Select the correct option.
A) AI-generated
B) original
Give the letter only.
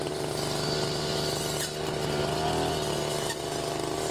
B